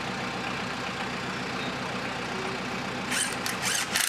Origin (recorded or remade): recorded